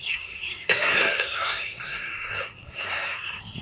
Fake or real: fake